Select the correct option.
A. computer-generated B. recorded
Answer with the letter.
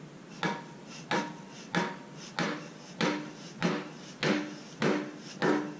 B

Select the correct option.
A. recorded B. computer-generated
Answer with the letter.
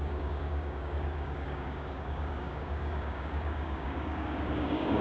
B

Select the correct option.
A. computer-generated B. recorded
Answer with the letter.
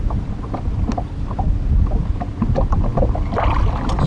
B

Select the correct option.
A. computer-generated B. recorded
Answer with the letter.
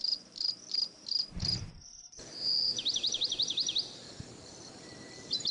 A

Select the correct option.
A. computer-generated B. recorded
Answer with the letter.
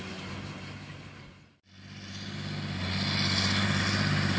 B